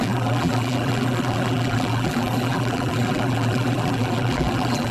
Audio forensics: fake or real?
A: fake